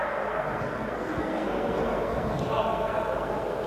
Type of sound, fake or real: fake